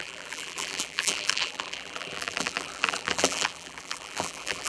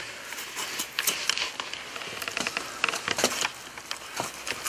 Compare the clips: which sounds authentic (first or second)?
second